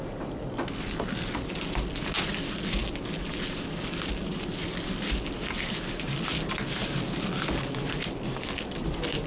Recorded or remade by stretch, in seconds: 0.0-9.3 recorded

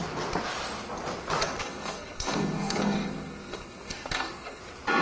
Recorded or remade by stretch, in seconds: 0.0-1.6 recorded; 1.6-4.6 remade; 4.6-5.0 recorded

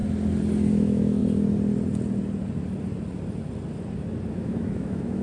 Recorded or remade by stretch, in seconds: 0.0-0.7 recorded; 0.7-1.2 remade; 1.2-4.3 recorded; 4.3-5.2 remade

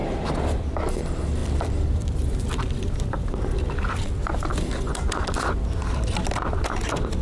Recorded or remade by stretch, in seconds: 0.0-0.7 remade; 0.7-1.4 recorded; 1.4-3.6 remade; 3.6-7.2 recorded

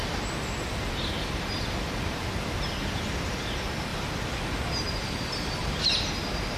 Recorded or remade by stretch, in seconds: 0.0-3.9 recorded; 3.9-4.4 remade; 4.4-5.0 recorded; 5.0-5.9 remade; 5.9-6.6 recorded

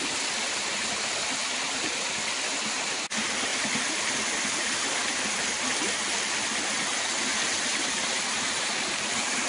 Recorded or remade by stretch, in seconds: 0.0-7.7 recorded; 7.7-8.9 remade; 8.9-9.5 recorded